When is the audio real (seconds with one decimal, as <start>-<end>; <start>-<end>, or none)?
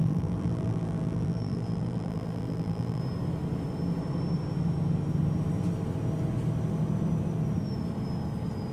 3.0-8.7